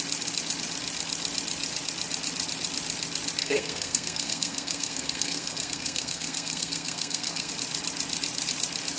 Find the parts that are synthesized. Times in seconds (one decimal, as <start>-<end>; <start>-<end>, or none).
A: 3.4-7.5